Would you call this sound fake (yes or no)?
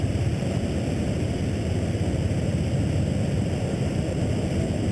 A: no